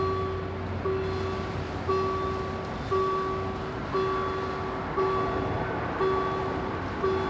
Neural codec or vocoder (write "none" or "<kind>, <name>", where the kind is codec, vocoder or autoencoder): none